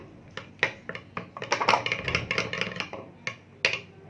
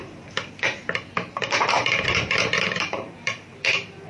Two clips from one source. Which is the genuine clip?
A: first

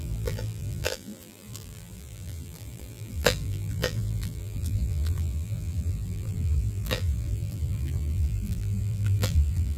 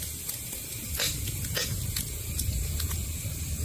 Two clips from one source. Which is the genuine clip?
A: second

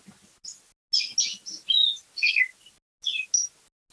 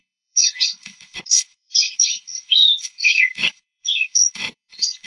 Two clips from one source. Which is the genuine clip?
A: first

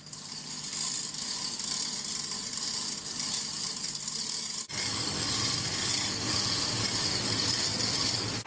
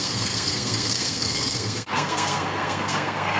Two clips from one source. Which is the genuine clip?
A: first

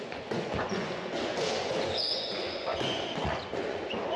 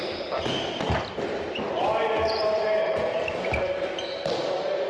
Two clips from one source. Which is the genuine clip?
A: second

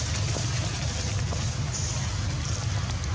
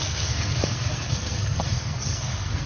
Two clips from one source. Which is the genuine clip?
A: first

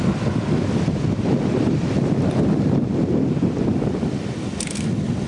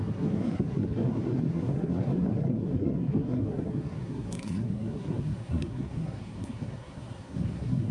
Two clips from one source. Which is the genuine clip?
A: first